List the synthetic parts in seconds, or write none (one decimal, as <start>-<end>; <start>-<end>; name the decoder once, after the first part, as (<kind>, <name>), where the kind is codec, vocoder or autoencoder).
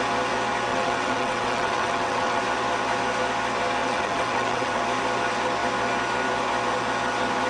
0.7-2.4 (vocoder, WaveNeXt); 3.8-4.8